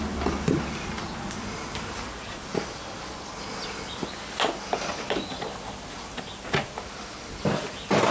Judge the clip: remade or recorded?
recorded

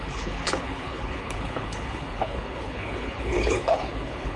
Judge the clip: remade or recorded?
remade